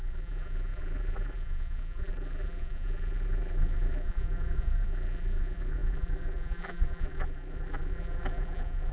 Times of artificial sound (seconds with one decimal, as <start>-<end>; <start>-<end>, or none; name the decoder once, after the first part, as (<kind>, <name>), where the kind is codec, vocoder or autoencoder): 0.0-8.9 (vocoder, BigVGAN v2)